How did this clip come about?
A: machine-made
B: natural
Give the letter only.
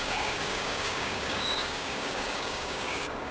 A